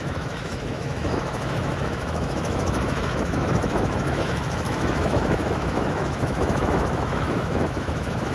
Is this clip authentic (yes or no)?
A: no